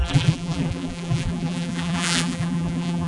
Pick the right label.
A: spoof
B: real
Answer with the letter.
A